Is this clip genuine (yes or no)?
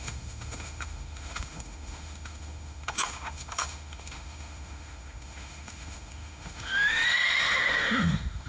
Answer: no